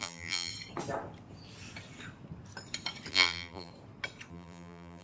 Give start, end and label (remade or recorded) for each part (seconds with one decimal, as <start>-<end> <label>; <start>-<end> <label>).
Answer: 0.0-0.5 remade; 0.5-3.1 recorded; 3.1-3.7 remade; 3.7-4.3 recorded; 4.3-5.0 remade